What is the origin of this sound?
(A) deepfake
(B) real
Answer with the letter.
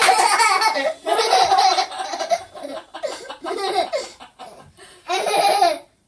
A